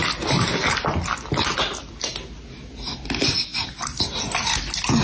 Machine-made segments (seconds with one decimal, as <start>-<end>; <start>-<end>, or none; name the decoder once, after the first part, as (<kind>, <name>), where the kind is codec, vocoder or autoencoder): none

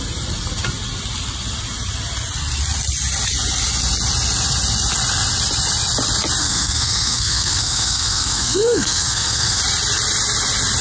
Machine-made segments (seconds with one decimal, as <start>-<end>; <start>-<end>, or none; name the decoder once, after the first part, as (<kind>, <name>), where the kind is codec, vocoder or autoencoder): 6.4-9.6 (codec, SNAC)

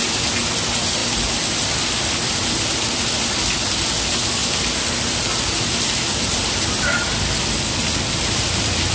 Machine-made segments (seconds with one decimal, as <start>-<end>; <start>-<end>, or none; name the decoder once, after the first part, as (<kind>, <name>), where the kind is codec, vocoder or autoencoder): none

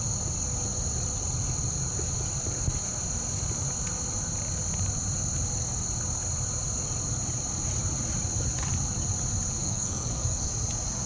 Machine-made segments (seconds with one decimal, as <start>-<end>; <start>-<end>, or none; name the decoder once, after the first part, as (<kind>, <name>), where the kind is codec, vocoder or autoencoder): 9.6-10.5 (codec, SNAC)